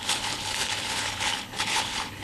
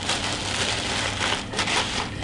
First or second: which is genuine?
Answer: second